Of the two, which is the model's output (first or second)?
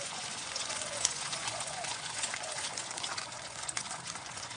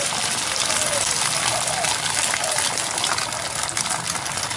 first